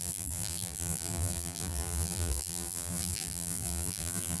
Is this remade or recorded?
remade